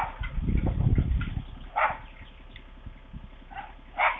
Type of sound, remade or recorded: recorded